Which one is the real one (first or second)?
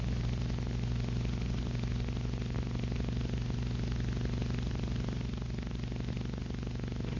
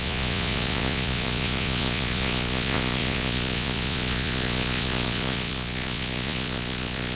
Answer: first